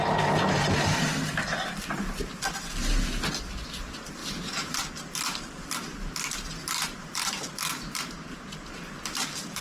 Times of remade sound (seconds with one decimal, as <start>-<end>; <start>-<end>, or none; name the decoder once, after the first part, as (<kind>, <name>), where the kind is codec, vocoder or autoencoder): 4.2-4.8 (vocoder, BigVGAN v2); 7.0-7.5